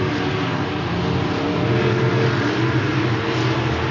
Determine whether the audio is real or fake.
real